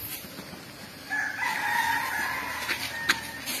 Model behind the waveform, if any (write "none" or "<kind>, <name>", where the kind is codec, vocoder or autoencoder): none